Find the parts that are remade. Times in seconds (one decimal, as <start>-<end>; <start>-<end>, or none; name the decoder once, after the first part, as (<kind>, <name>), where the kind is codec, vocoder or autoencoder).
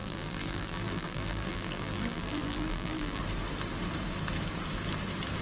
0.0-3.2 (vocoder, BigVGAN v2)